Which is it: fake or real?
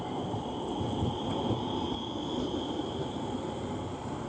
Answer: fake